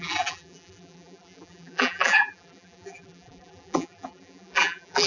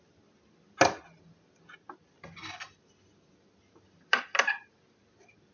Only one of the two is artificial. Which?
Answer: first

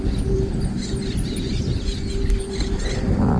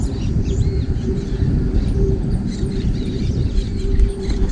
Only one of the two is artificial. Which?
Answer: second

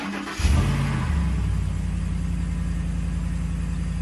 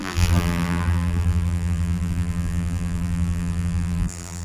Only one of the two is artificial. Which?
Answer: second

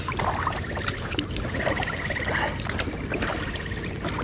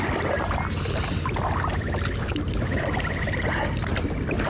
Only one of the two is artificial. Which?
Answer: first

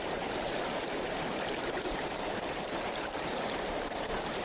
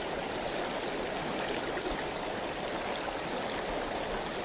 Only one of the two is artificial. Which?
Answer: first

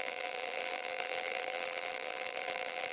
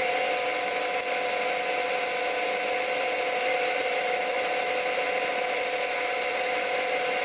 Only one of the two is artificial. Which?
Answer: first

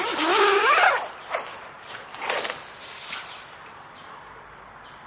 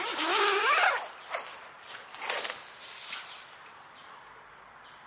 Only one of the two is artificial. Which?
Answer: first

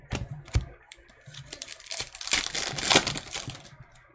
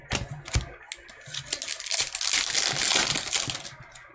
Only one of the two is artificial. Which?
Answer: first